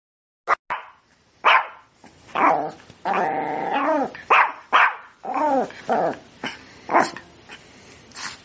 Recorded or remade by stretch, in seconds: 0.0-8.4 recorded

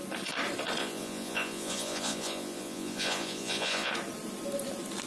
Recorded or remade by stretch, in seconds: 0.0-0.8 recorded; 0.8-3.9 remade; 3.9-5.1 recorded

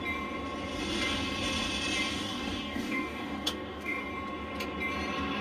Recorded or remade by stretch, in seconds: 0.0-2.1 recorded; 2.1-4.1 remade; 4.1-5.4 recorded

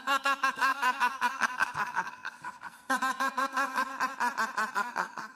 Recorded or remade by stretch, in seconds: 0.0-3.9 remade; 3.9-4.7 recorded; 4.7-5.4 remade

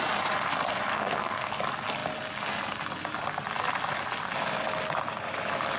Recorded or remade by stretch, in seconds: 0.0-0.9 recorded; 0.9-1.5 remade; 1.5-5.8 recorded

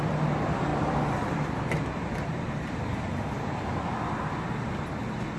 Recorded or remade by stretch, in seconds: 0.0-0.7 recorded; 0.7-3.9 remade; 3.9-5.4 recorded

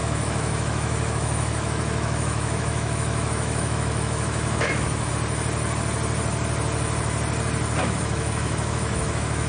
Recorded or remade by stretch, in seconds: 0.0-5.1 remade; 5.1-7.8 recorded; 7.8-9.5 remade